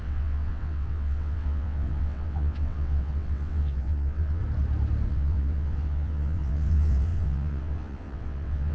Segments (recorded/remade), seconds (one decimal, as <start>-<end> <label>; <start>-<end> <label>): 0.0-4.4 remade; 4.4-5.1 recorded; 5.1-8.7 remade